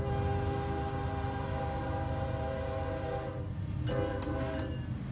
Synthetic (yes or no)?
no